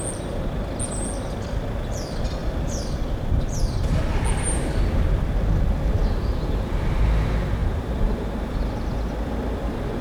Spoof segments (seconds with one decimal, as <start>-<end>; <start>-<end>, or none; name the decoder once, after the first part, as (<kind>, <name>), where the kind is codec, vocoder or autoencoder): 7.6-9.1 (vocoder, BigVGAN v2)